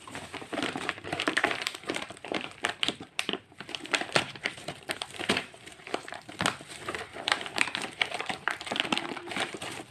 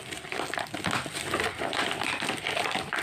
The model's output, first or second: first